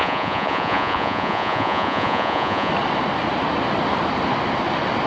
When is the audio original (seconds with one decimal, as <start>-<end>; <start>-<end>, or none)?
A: 2.7-5.1